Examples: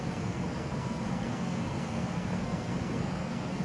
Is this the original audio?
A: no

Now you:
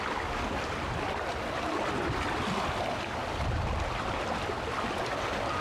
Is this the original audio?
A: yes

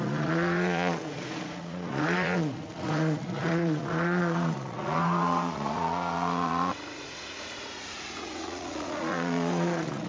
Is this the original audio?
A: no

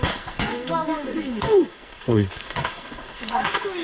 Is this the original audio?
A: no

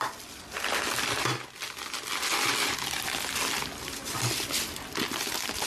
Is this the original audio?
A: yes